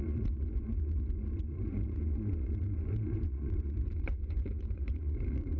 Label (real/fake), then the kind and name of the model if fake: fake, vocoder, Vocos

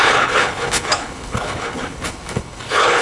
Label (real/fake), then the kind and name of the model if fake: fake, codec, HILCodec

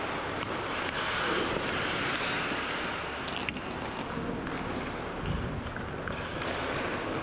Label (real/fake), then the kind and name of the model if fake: real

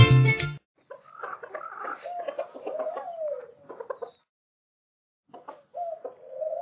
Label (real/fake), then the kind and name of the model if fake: real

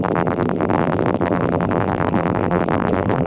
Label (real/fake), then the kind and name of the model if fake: fake, vocoder, BigVGAN v2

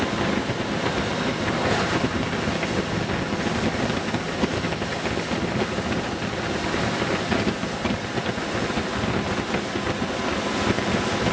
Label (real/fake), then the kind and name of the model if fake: real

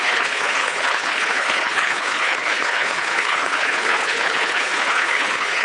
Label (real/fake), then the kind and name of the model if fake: fake, codec, HILCodec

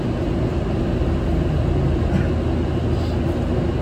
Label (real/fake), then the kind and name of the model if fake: real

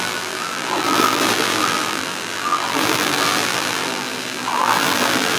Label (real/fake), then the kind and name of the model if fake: fake, vocoder, BigVGAN v2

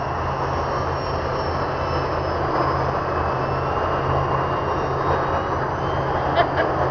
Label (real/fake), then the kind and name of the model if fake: real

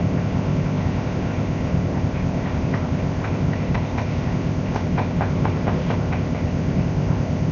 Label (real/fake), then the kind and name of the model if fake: fake, codec, ZipCodec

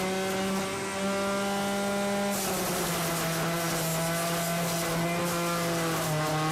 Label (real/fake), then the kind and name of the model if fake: real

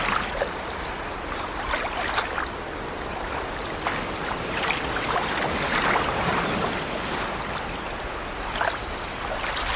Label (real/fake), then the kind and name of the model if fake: real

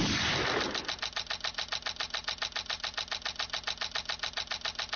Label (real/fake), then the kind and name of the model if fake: real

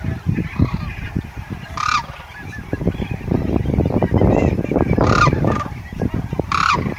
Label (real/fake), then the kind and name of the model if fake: fake, vocoder, BigVGAN v2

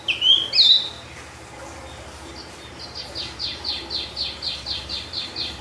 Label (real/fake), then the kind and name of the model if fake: real